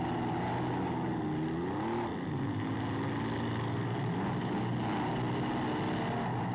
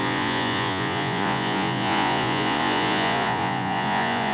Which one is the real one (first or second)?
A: first